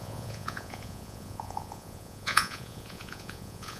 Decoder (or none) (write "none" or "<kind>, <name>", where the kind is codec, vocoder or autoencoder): vocoder, Vocos